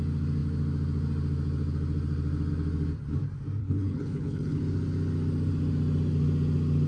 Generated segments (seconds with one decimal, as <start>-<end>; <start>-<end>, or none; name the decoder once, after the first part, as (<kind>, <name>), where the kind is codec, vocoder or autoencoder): 3.6-4.6 (codec, HILCodec)